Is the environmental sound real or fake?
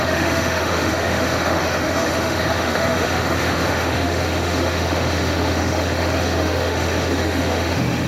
fake